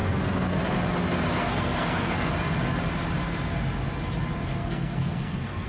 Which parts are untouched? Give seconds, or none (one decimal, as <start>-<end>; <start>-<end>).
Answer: 0.6-1.4; 2.3-4.6

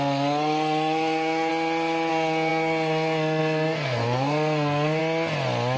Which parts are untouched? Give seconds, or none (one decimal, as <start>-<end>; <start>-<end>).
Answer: 1.5-2.1; 5.0-5.8

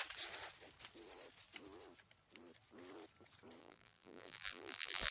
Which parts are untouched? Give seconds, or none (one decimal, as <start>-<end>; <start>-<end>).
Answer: 0.0-3.6

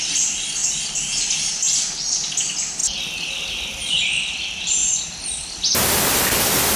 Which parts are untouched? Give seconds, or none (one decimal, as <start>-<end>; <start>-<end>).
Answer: 0.0-6.8